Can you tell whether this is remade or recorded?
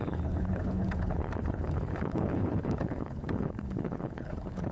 remade